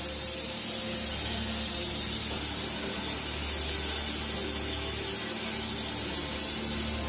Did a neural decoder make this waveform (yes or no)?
no